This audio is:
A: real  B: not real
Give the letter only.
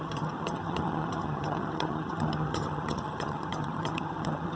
B